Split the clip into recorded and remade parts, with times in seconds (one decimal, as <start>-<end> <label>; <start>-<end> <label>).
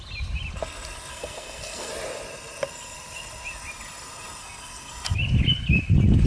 0.0-1.1 recorded; 1.1-1.9 remade; 1.9-4.4 recorded; 4.4-4.9 remade; 4.9-6.3 recorded